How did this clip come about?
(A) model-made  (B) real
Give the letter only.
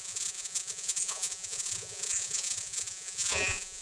A